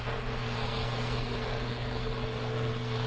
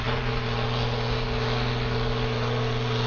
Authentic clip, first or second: second